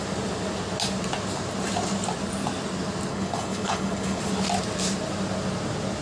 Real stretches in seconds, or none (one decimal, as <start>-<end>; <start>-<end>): 0.0-3.1; 4.2-6.0